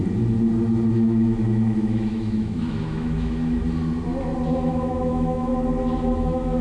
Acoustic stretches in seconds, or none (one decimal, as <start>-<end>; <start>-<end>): 0.0-0.9; 3.6-4.5; 5.5-6.0